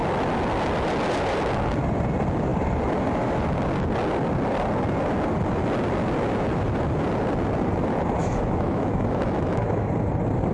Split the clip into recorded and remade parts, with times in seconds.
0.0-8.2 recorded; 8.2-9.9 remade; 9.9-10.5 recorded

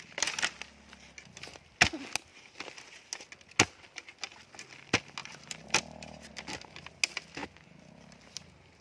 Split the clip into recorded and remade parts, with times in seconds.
0.0-2.3 recorded; 2.3-3.0 remade; 3.0-5.2 recorded; 5.2-6.3 remade; 6.3-8.8 recorded